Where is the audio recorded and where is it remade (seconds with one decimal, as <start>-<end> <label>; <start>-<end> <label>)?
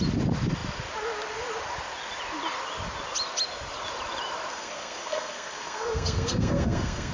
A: 0.0-4.5 recorded; 4.5-7.1 remade